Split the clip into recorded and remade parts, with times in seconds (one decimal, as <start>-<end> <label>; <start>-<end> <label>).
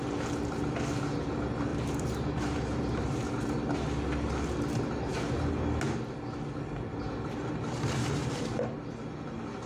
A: 0.0-1.7 recorded; 1.7-3.6 remade; 3.6-6.9 recorded; 6.9-8.1 remade; 8.1-9.7 recorded